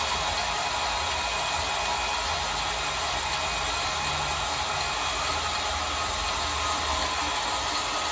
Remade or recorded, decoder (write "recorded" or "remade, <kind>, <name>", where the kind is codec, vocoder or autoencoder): recorded